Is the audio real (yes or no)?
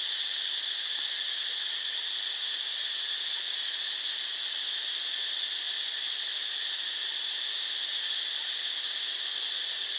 yes